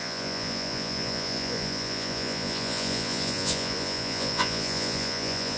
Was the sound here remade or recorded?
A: remade